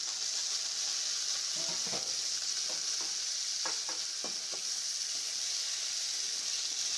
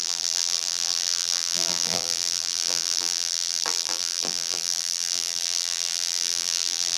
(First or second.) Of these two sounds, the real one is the first